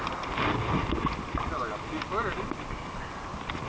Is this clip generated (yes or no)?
no